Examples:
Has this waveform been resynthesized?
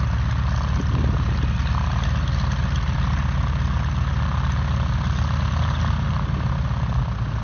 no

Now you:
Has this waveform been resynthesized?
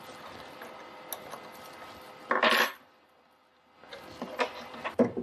no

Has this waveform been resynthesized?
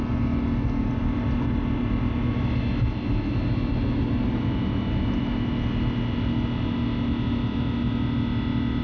no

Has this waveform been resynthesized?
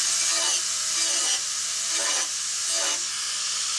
no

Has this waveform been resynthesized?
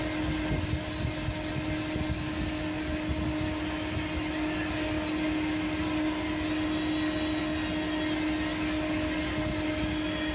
no